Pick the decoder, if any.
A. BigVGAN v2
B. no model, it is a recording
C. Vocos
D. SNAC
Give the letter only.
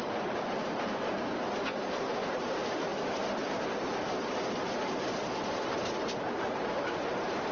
A